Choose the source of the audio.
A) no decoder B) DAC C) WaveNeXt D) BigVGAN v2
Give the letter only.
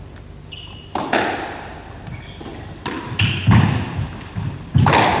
A